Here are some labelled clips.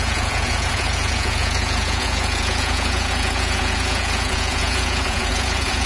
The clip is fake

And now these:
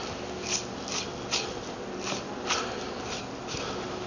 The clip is real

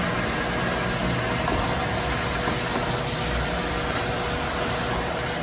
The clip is real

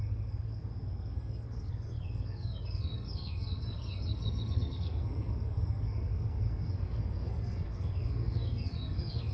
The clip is fake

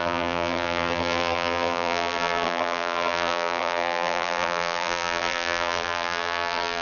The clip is fake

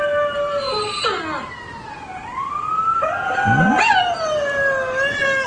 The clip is real